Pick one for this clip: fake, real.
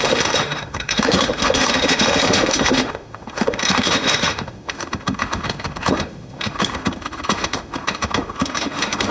fake